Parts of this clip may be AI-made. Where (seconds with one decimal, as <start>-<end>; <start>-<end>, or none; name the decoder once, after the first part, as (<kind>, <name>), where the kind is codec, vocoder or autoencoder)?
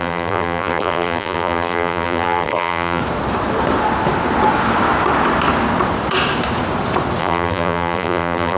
0.0-3.0 (vocoder, BigVGAN v2); 7.2-8.6